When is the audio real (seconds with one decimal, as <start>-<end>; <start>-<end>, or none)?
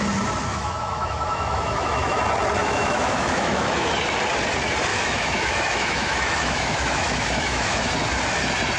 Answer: 0.0-0.5; 2.2-2.6; 3.9-4.9; 7.9-8.8